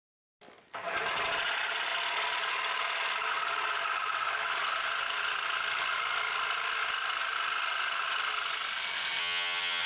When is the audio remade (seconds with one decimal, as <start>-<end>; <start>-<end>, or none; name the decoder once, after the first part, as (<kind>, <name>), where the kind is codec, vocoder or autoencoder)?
9.2-9.9 (vocoder, HiFi-GAN)

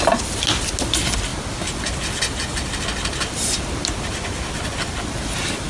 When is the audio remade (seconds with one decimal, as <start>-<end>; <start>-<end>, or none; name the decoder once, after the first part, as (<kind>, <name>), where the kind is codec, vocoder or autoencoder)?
none

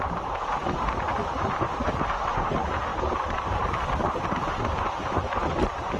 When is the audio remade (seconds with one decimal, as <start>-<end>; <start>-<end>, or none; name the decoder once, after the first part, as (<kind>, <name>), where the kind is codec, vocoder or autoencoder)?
2.9-4.4 (vocoder, BigVGAN v2)

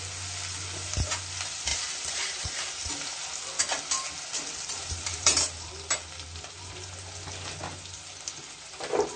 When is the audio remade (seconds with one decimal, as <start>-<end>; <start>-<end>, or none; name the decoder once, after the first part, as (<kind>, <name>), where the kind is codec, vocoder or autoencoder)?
1.7-2.9 (vocoder, BigVGAN v2); 4.3-5.7

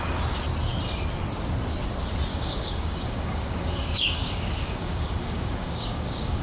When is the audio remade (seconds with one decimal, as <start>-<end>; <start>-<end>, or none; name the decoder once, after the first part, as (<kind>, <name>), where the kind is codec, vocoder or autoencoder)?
2.3-6.4 (codec, DAC)

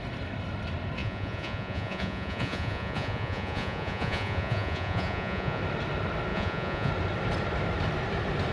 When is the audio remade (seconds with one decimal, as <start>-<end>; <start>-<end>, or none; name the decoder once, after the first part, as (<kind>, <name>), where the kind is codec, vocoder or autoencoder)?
1.0-5.6 (vocoder, Vocos); 6.3-6.9

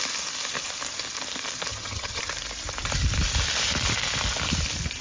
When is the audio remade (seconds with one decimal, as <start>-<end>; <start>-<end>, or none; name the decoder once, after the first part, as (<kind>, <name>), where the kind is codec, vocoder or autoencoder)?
1.7-2.2 (vocoder, HiFi-GAN)